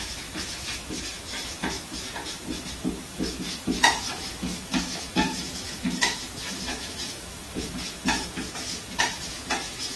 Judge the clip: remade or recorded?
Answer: remade